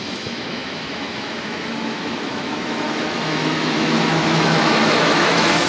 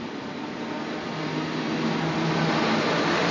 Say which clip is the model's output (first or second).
first